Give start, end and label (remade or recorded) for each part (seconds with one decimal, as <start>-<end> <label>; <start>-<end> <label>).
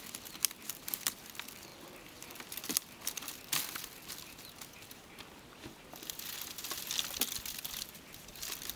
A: 0.0-8.8 recorded